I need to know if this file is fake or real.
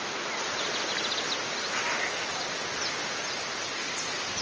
real